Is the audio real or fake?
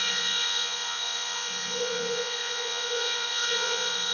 fake